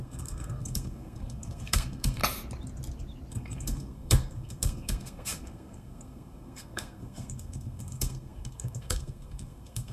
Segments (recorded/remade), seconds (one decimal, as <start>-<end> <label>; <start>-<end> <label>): 0.0-2.2 remade; 2.2-3.3 recorded; 3.3-9.9 remade